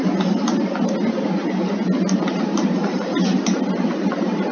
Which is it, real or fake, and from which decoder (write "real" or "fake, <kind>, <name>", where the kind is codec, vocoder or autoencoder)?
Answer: real